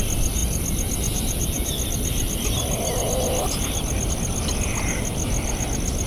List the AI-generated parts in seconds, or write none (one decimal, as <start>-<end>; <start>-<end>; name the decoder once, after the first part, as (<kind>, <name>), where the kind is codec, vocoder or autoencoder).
none